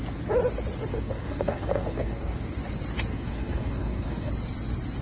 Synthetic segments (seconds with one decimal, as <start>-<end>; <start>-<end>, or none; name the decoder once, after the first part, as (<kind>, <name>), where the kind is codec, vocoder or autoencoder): 0.9-2.6 (codec, SNAC); 3.1-4.3